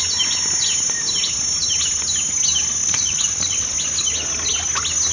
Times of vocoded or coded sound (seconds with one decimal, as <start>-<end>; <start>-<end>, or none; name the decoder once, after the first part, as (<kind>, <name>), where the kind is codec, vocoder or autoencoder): 2.8-3.7 (vocoder, Vocos)